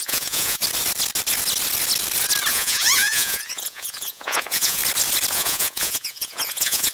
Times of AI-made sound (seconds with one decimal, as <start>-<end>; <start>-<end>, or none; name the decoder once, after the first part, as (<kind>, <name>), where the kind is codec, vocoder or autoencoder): 0.0-0.6 (vocoder, Vocos); 2.5-4.8; 5.3-6.9